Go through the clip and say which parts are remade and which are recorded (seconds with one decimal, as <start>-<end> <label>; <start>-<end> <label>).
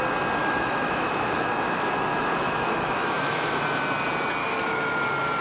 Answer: 0.0-0.4 recorded; 0.4-3.6 remade; 3.6-4.4 recorded; 4.4-5.0 remade; 5.0-5.4 recorded